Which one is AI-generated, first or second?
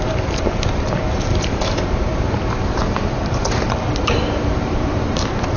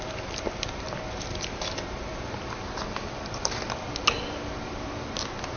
first